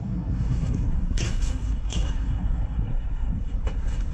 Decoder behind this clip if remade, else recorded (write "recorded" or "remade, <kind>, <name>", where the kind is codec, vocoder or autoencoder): remade, codec, SNAC